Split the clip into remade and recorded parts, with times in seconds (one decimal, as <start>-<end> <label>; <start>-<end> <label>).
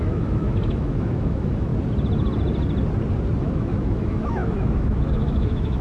0.0-1.7 remade; 1.7-3.4 recorded; 3.4-5.8 remade